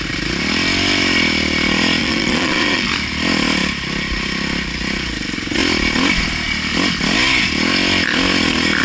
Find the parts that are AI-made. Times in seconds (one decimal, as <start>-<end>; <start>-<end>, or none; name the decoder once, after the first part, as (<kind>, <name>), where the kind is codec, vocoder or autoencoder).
2.0-2.9 (vocoder, Vocos)